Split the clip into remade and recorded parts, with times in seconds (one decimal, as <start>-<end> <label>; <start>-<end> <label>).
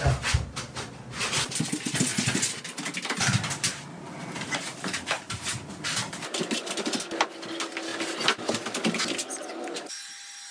0.0-10.5 recorded